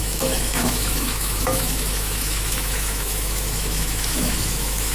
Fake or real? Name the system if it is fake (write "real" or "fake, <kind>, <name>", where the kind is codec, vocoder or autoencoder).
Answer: fake, autoencoder, DAC-VAE